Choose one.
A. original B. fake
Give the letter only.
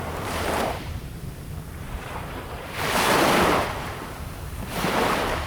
B